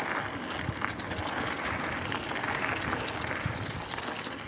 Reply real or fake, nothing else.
real